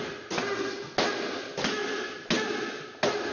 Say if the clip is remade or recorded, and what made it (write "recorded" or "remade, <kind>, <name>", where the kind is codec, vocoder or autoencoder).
recorded